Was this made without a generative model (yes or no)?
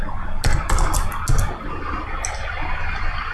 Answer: yes